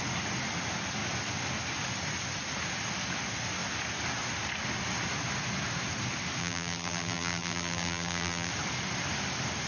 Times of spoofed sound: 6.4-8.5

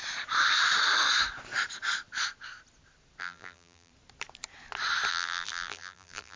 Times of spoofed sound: 3.2-3.9; 5.1-6.4

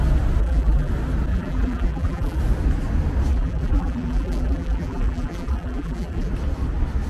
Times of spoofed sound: 0.4-0.9; 1.3-2.4; 3.3-6.3

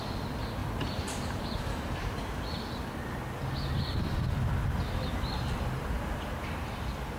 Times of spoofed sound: 0.6-2.4

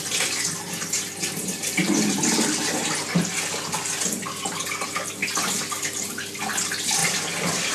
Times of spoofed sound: none

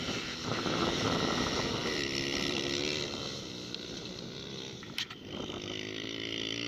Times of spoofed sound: 0.0-6.7